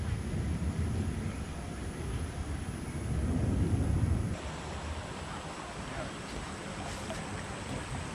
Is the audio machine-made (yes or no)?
no